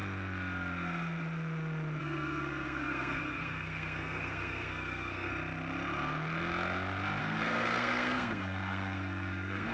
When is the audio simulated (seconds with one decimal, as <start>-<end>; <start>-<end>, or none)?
2.0-5.3; 7.2-9.7